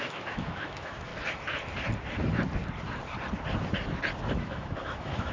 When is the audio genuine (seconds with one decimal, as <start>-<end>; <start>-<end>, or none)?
1.1-4.3